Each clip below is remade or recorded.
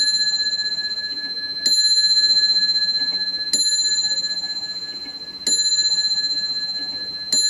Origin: recorded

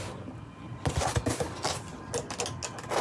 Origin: recorded